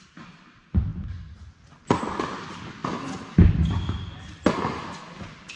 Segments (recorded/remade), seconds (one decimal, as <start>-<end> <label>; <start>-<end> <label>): 0.0-5.6 recorded

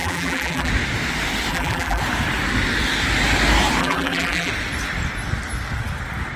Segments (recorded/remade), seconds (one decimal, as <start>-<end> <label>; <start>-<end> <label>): 0.0-0.7 remade; 0.7-1.5 recorded; 1.5-2.0 remade; 2.0-3.8 recorded; 3.8-4.5 remade; 4.5-6.4 recorded

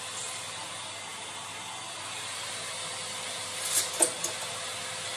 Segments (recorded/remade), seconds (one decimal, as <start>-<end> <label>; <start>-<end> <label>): 0.0-5.2 recorded

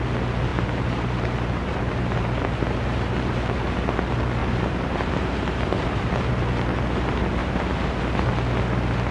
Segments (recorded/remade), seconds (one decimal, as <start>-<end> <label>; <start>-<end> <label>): 0.0-0.5 recorded; 0.5-3.7 remade; 3.7-4.4 recorded; 4.4-6.3 remade; 6.3-7.4 recorded; 7.4-8.0 remade; 8.0-9.1 recorded

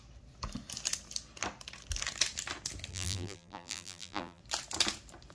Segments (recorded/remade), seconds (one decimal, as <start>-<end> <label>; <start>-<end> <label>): 0.0-2.9 recorded; 2.9-4.4 remade; 4.4-5.3 recorded

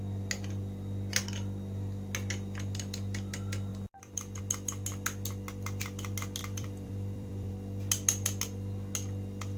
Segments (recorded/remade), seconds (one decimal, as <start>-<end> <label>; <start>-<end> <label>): 0.0-3.7 recorded; 3.7-4.4 remade; 4.4-6.4 recorded; 6.4-7.5 remade; 7.5-9.6 recorded

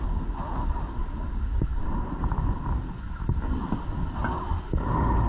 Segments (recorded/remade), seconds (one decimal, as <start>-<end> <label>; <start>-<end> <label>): 0.0-5.3 recorded